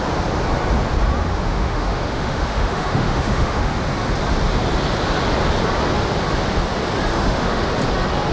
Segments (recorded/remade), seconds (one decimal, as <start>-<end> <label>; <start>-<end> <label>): 0.0-1.3 recorded; 1.3-3.8 remade; 3.8-7.1 recorded; 7.1-7.7 remade; 7.7-8.3 recorded